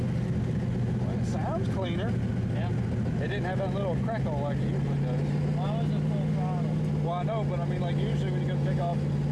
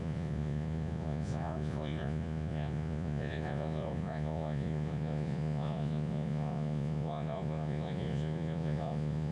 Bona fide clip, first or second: first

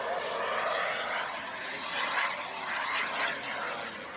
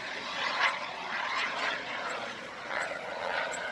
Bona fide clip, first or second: first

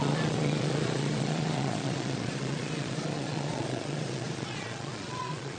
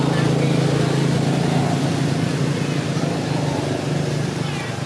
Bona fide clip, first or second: second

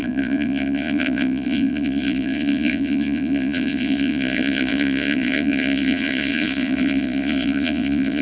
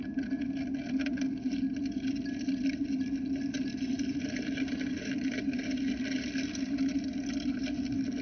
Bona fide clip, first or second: second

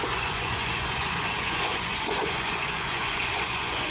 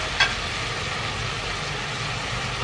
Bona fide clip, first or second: second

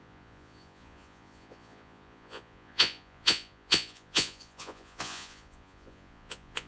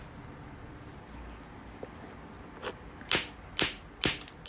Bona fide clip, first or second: second